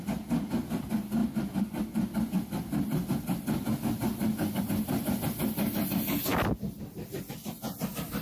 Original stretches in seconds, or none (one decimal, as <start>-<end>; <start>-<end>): 0.0-8.2